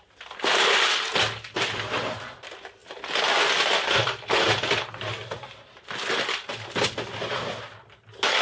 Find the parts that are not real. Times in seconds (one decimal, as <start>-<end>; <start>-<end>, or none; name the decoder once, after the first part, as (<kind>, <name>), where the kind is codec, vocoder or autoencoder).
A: none

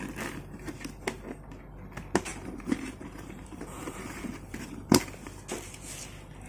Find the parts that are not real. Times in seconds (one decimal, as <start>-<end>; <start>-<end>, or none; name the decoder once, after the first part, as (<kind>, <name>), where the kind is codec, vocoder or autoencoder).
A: 2.3-5.0 (vocoder, BigVGAN v2)

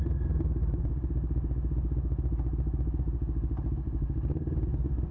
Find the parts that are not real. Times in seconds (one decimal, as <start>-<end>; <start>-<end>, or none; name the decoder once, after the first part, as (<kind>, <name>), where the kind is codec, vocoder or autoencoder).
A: none